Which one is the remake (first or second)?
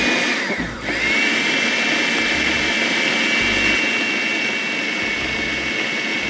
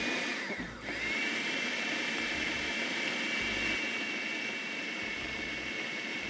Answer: second